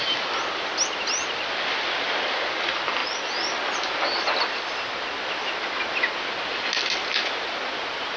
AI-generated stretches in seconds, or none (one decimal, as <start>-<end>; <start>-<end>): none

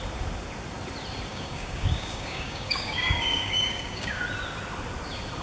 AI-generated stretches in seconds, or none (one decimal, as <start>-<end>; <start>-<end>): 1.3-4.2